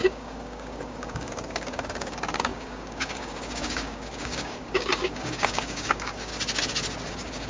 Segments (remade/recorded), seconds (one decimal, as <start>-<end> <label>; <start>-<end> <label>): 0.0-6.3 remade; 6.3-7.1 recorded; 7.1-7.5 remade